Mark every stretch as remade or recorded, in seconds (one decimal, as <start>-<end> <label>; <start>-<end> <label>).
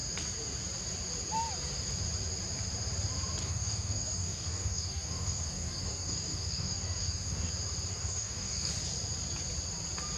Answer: 0.0-3.4 recorded; 3.4-7.5 remade; 7.5-7.9 recorded; 7.9-8.7 remade; 8.7-10.2 recorded